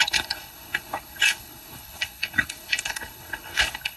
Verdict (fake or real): fake